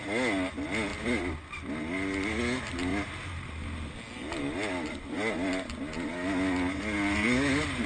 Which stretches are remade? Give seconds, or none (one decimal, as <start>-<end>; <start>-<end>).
none